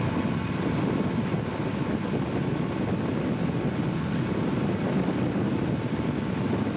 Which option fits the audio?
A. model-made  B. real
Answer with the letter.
B